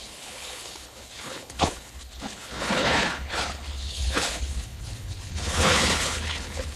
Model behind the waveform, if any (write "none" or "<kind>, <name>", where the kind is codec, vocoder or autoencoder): codec, HILCodec